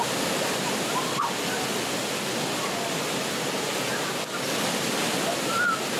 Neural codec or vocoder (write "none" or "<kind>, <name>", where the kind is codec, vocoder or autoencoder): none